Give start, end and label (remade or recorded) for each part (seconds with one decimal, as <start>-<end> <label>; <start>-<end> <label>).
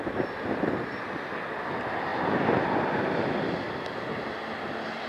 0.0-5.1 recorded